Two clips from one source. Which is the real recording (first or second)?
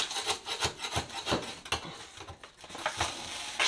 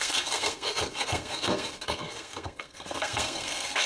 first